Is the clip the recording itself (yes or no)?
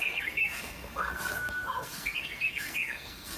no